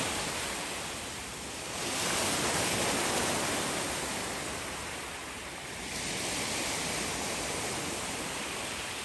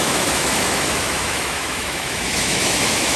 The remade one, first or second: second